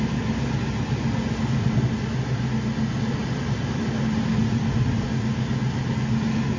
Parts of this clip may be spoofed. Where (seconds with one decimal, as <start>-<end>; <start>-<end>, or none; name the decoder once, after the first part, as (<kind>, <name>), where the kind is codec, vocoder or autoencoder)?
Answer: none